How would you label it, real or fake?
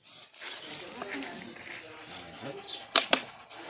real